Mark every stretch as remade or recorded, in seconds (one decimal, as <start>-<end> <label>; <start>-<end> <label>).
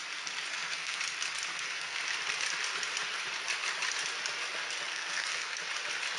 0.0-0.5 recorded; 0.5-1.0 remade; 1.0-1.5 recorded; 1.5-2.0 remade; 2.0-4.9 recorded; 4.9-5.6 remade; 5.6-6.2 recorded